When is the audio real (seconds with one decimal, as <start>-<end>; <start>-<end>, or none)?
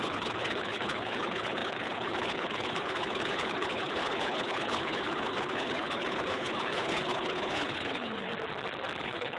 8.3-9.0